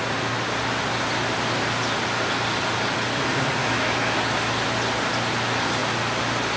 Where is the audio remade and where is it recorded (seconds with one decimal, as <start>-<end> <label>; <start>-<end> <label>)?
0.0-3.6 recorded; 3.6-4.2 remade; 4.2-6.6 recorded